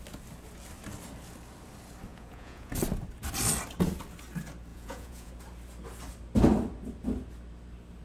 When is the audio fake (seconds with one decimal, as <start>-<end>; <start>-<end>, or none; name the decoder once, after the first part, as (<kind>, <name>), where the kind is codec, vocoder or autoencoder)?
2.1-2.7 (vocoder, Vocos); 4.7-5.3